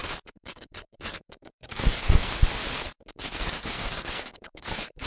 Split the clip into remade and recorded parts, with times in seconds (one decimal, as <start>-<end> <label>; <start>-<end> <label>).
0.0-2.3 remade; 2.3-2.7 recorded; 2.7-5.1 remade